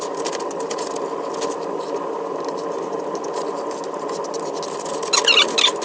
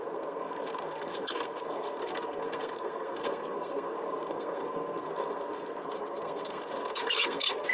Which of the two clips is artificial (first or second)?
second